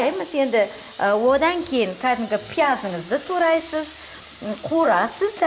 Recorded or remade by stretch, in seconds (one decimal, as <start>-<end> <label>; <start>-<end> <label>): 0.0-2.5 recorded; 2.5-3.6 remade; 3.6-4.1 recorded; 4.1-5.1 remade; 5.1-5.5 recorded